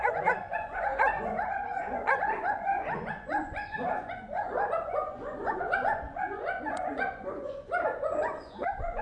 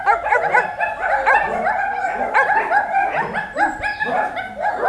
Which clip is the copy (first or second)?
first